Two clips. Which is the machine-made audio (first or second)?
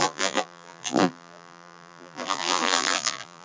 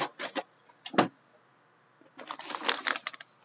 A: first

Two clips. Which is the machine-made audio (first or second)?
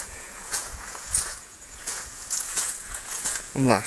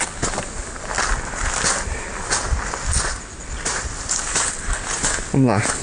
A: first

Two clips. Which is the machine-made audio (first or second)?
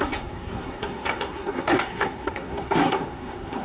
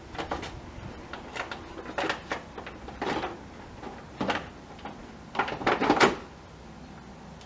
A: first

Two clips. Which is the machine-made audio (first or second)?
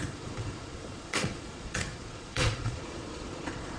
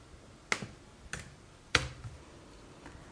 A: first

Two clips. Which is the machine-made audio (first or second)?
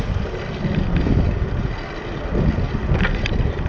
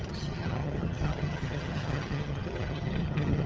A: second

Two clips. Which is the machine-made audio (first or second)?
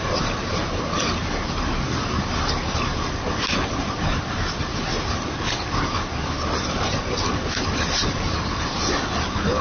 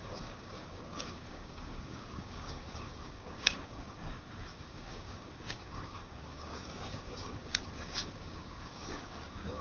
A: second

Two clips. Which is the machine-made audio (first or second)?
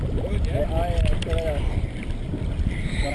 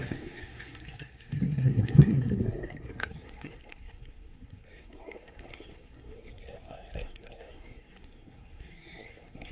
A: second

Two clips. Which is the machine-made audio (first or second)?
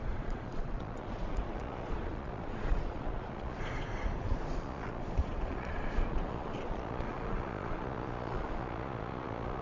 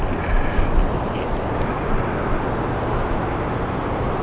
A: first